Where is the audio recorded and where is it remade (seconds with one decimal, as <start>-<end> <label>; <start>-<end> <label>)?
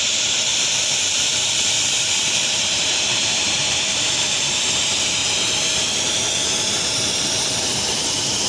0.0-5.2 remade; 5.2-6.1 recorded; 6.1-8.5 remade